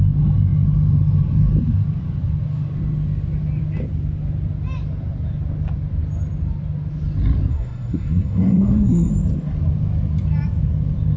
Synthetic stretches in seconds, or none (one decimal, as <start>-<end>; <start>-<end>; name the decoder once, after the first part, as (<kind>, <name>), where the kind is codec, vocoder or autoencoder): 7.5-9.1 (codec, SNAC)